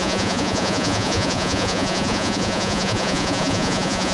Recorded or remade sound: remade